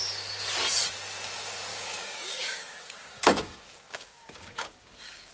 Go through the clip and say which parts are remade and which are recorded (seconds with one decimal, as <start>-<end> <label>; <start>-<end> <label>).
0.0-1.7 recorded; 1.7-5.3 remade